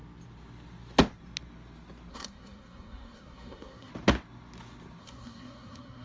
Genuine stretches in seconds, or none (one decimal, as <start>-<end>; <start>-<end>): 0.0-2.1; 3.9-5.0